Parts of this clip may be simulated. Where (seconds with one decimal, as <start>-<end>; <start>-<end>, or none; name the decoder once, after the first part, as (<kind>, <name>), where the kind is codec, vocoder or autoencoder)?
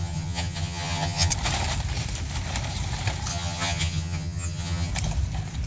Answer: 0.0-1.3 (vocoder, HiFi-GAN); 3.3-4.9